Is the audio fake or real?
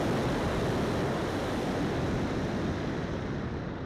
real